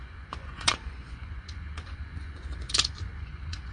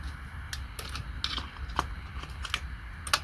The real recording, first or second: second